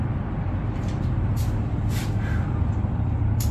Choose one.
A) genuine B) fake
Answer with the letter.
B